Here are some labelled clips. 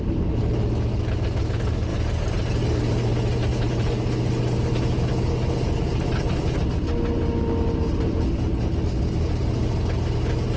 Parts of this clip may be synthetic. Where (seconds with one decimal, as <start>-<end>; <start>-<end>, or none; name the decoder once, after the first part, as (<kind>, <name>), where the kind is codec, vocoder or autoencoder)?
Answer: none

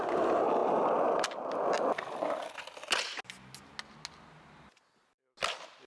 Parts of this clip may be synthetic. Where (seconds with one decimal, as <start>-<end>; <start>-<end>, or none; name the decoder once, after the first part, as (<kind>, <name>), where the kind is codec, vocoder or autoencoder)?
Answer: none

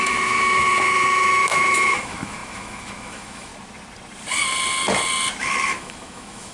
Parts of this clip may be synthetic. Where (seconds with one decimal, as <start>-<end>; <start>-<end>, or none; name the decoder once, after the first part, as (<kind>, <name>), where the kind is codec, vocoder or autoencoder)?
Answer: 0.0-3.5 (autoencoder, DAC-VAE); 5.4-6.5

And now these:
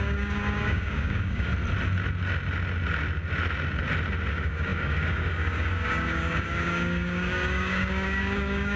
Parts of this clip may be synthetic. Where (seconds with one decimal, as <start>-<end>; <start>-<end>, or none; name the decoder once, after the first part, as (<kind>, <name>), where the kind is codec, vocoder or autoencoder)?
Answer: 0.0-1.5 (codec, DAC); 4.3-8.8